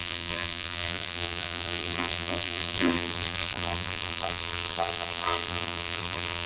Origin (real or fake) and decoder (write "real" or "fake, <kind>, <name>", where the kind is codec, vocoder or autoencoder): fake, vocoder, BigVGAN v2